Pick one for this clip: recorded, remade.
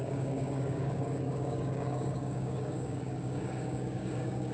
remade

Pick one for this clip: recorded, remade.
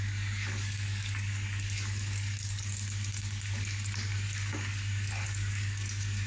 remade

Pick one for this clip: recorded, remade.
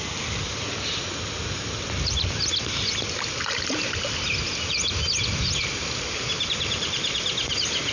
recorded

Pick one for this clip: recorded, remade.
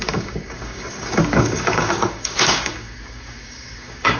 remade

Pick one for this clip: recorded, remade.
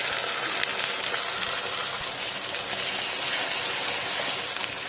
recorded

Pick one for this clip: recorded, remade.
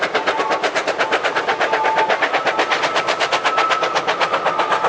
recorded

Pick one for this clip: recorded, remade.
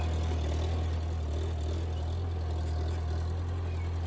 recorded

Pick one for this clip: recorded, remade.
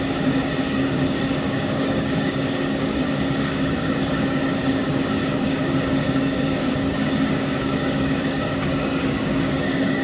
remade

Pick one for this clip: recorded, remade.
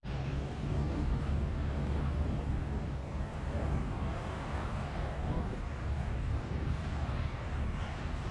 remade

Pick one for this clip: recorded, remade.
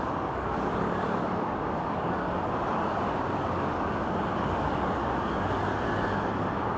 remade